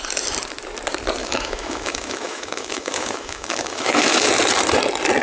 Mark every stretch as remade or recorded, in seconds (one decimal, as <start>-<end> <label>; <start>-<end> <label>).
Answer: 0.0-1.2 recorded; 1.2-4.3 remade; 4.3-5.2 recorded